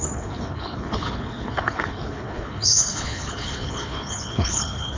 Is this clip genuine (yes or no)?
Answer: no